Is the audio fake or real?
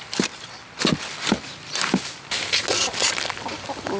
real